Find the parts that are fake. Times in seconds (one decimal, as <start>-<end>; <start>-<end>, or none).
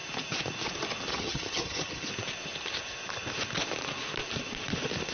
1.1-2.1